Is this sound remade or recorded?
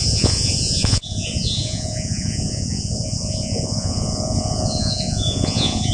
remade